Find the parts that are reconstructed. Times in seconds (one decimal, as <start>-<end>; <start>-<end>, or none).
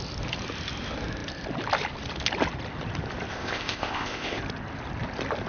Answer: 3.3-4.4